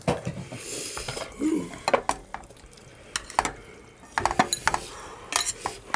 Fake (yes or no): no